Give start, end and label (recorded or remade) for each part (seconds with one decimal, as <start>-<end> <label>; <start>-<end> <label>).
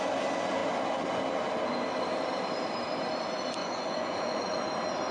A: 0.0-3.6 recorded; 3.6-4.6 remade; 4.6-5.1 recorded